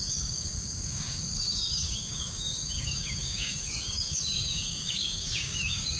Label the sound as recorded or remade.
remade